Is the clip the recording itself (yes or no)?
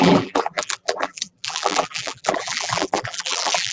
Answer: no